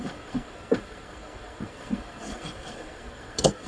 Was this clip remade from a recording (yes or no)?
yes